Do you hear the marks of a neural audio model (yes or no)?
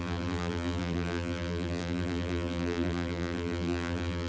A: yes